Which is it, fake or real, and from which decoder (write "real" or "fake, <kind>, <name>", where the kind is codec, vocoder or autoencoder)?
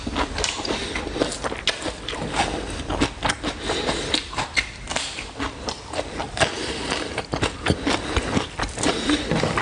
fake, vocoder, BigVGAN v2